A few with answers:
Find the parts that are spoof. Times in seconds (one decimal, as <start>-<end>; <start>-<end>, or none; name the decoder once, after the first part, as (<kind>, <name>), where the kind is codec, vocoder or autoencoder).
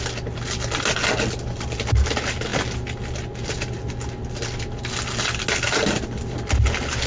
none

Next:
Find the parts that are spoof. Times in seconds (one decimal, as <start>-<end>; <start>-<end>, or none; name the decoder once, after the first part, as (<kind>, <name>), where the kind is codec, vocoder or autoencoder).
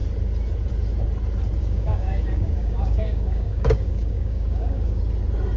1.6-5.0 (codec, DAC)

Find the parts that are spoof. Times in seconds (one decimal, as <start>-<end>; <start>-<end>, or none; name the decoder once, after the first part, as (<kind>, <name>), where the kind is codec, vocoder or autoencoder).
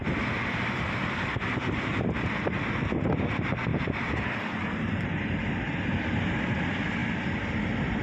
0.0-0.9 (vocoder, BigVGAN v2); 3.7-5.1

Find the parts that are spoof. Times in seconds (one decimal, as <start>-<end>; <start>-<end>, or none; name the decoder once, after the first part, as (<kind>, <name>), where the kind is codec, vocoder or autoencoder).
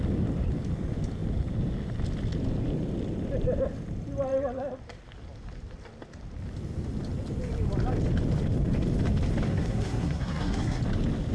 9.5-10.8 (codec, SNAC)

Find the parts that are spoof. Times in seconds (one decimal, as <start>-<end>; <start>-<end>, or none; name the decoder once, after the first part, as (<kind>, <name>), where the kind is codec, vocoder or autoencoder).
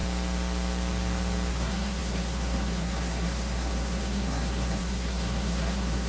1.5-6.1 (codec, SNAC)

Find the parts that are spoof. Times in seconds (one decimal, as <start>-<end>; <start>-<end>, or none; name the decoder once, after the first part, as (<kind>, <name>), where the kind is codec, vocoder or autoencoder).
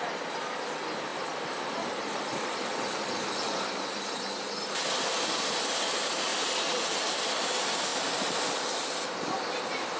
none